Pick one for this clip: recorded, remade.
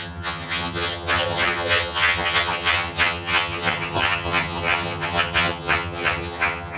remade